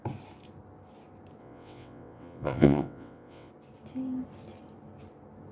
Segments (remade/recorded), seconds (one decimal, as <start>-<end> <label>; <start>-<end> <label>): 0.0-1.4 recorded; 1.4-3.5 remade; 3.5-5.5 recorded